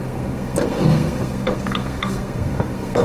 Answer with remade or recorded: remade